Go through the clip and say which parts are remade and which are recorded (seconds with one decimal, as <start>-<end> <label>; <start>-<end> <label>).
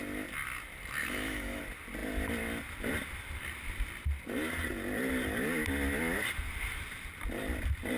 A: 0.0-1.0 recorded; 1.0-1.6 remade; 1.6-8.0 recorded